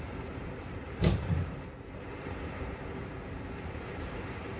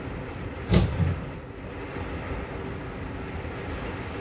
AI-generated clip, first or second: first